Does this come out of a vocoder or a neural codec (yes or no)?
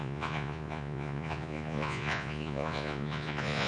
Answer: yes